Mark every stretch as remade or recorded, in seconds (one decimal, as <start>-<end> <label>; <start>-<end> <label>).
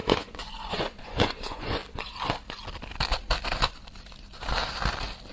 0.0-1.8 remade; 1.8-5.3 recorded